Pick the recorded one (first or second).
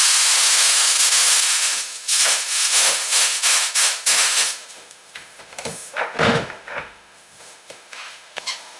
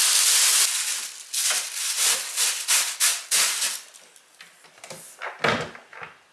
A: second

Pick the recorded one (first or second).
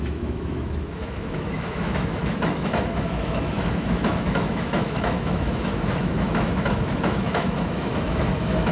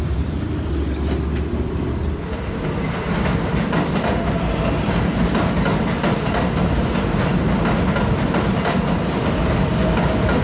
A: second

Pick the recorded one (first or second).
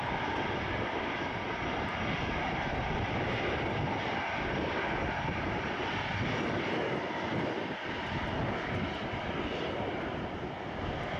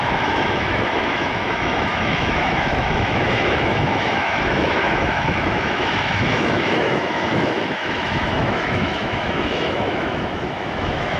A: first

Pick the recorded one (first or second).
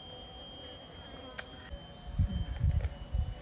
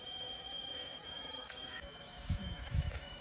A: first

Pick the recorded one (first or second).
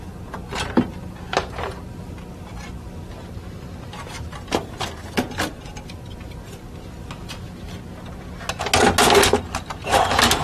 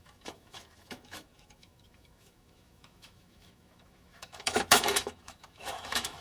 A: first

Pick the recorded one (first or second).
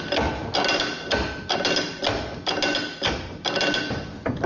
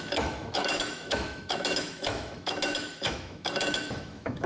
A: first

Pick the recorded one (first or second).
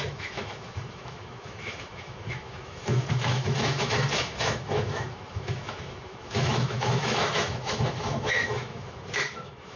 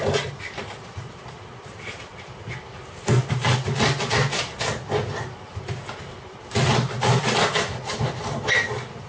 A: second